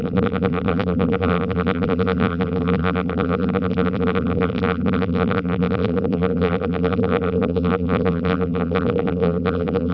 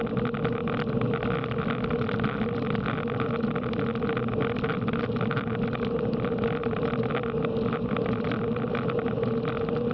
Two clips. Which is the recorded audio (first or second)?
second